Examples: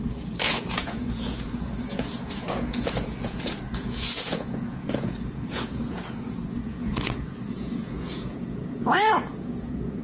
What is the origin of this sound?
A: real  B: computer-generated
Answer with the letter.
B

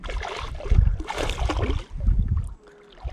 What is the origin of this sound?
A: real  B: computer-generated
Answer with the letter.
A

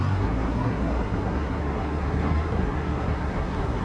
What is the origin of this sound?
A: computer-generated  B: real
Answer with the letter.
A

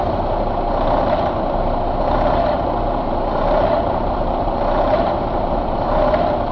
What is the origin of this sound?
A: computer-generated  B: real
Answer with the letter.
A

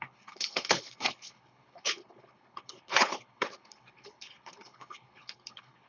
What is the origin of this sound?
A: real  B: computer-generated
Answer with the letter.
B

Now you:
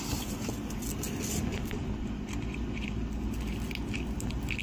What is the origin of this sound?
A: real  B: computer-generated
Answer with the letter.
A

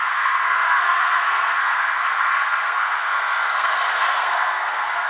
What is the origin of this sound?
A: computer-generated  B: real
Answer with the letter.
A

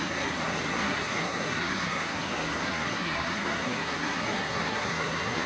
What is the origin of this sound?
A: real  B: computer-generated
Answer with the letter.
B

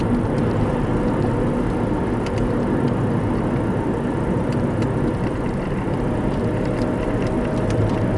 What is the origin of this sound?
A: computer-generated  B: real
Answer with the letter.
B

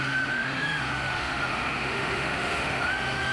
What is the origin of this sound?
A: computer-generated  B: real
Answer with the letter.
A